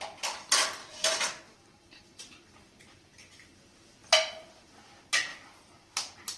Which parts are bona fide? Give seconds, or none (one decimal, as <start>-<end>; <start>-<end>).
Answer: 0.0-0.8; 3.3-4.0; 4.8-5.3